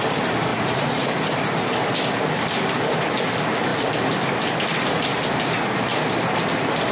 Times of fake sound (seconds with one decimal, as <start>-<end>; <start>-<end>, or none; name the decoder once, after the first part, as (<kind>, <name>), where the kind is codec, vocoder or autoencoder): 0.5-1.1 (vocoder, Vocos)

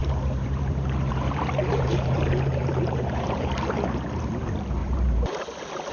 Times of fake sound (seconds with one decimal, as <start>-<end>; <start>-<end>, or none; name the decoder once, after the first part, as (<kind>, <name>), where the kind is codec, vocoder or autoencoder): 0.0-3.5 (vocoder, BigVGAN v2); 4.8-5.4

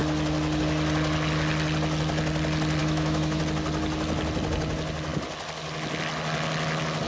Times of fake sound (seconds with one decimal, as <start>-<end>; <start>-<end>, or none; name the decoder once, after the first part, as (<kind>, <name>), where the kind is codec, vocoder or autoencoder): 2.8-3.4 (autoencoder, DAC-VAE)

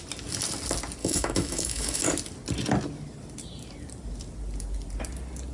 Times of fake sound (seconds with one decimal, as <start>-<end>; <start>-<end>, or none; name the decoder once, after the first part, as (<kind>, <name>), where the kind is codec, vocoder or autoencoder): 1.0-2.0 (autoencoder, DAC-VAE)

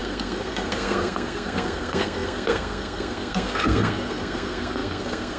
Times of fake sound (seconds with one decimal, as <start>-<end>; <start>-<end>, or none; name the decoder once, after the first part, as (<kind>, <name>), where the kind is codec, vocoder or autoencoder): 0.0-5.4 (codec, SNAC)

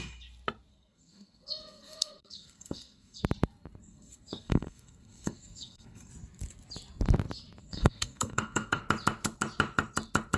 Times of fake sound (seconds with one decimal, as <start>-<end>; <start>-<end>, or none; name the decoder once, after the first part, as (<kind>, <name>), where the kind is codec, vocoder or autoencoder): 0.7-3.2 (codec, SNAC); 3.8-6.1; 7.6-8.8